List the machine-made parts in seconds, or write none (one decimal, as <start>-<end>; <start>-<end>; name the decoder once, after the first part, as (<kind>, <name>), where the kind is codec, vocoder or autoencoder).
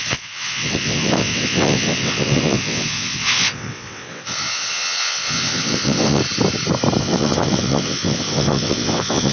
0.0-6.2 (vocoder, WaveNeXt); 7.0-9.3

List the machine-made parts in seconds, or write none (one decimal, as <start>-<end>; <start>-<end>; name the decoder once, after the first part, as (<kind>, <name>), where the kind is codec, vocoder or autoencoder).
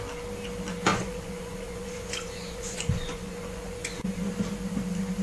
0.9-4.0 (vocoder, Vocos)